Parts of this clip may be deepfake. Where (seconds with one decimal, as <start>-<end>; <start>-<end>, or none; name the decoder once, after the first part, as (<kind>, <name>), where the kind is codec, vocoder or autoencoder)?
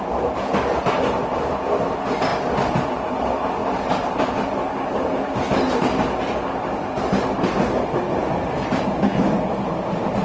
none